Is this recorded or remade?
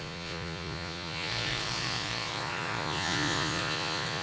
remade